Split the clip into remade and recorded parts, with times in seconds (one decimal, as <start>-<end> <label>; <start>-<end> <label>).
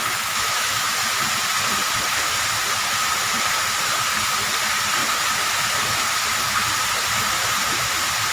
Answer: 0.0-0.9 remade; 0.9-8.3 recorded